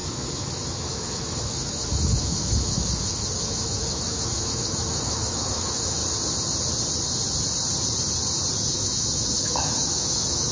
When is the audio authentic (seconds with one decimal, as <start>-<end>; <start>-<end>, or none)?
6.0-8.6